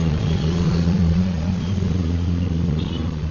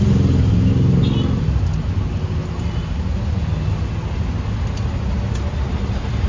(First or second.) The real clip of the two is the second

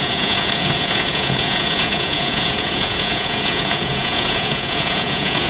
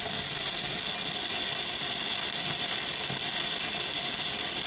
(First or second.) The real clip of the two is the second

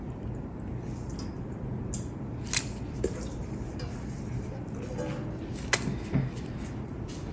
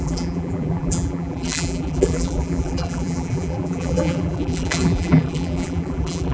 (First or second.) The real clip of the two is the first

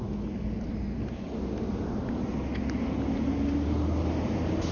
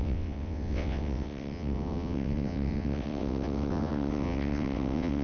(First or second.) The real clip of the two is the first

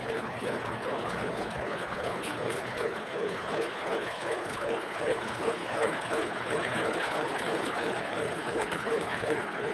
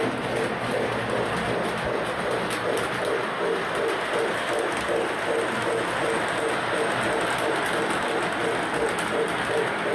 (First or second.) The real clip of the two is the second